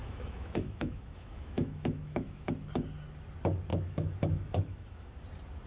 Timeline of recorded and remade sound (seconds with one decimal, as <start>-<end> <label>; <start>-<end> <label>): 0.0-2.5 remade; 2.5-3.7 recorded; 3.7-5.1 remade; 5.1-5.7 recorded